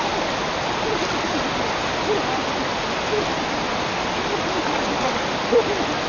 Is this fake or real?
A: real